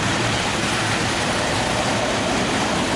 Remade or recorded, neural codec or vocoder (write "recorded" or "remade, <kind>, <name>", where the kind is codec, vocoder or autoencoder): remade, vocoder, BigVGAN v2